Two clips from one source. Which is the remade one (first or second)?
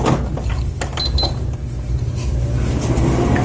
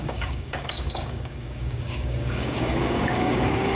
second